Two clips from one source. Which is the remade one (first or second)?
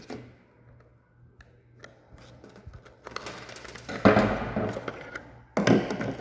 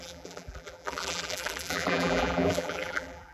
second